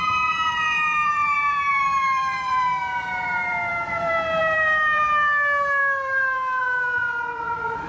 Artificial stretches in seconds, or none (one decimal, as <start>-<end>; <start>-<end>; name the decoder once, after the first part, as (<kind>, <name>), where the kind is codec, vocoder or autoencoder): 0.0-5.0 (vocoder, BigVGAN v2); 5.8-7.9